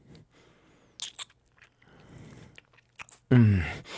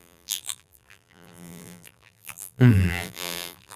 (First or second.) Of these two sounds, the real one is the first